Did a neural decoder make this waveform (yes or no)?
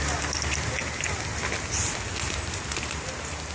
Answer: no